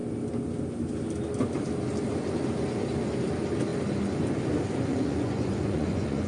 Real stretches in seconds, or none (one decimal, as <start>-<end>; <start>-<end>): 0.0-4.9